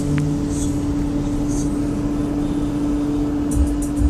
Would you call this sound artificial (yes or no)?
no